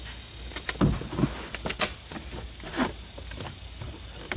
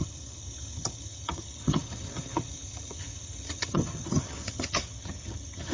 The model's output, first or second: second